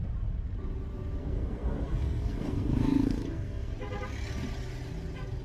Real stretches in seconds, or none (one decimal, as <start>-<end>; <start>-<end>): 0.0-1.2; 3.7-5.4